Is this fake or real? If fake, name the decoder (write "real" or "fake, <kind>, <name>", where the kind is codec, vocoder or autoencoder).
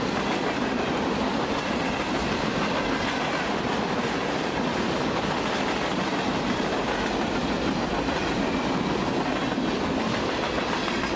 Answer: real